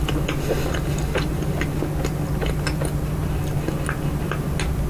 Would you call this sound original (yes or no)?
yes